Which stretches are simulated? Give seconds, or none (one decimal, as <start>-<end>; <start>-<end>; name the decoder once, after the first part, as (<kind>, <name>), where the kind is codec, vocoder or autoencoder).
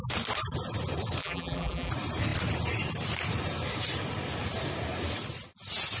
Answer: 1.2-1.9 (vocoder, BigVGAN v2)